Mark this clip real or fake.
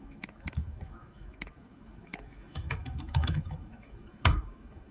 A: fake